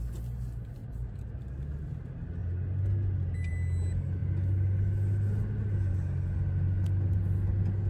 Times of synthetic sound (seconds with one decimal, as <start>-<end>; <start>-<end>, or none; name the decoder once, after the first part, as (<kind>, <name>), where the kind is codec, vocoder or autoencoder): 0.8-1.3 (vocoder, BigVGAN v2)